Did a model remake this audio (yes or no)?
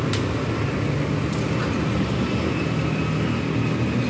no